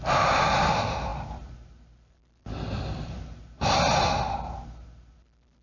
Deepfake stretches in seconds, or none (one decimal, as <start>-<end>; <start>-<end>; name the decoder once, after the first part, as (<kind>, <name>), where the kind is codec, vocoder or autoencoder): none